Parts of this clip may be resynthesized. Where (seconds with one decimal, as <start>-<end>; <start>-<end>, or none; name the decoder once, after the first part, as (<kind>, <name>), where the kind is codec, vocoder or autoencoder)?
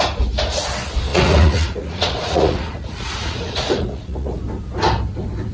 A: 1.1-4.4 (vocoder, Vocos)